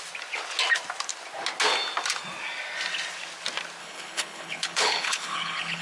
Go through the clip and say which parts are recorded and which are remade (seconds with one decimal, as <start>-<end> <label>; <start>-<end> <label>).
0.0-3.8 recorded; 3.8-5.8 remade